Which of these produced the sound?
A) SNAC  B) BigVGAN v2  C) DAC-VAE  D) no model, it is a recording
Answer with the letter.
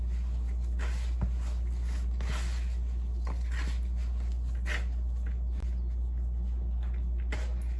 D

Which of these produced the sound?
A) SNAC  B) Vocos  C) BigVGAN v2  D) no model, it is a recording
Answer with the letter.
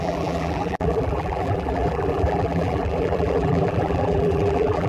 C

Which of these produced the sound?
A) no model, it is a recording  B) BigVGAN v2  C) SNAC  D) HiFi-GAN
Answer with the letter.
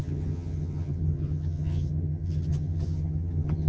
D